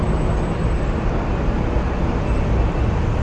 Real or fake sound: real